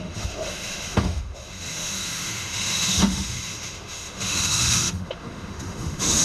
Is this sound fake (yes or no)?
yes